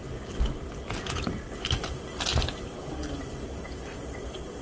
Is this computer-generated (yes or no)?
no